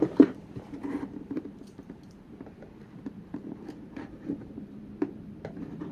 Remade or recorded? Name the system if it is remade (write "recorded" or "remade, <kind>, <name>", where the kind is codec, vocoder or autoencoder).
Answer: remade, vocoder, BigVGAN v2